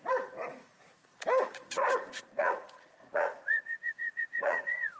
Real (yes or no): no